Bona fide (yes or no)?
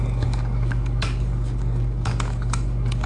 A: no